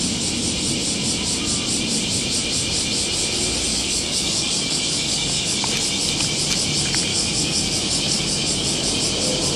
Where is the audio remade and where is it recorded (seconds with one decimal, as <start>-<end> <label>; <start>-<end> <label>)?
0.0-3.7 recorded; 3.7-5.7 remade; 5.7-7.1 recorded; 7.1-9.0 remade; 9.0-9.6 recorded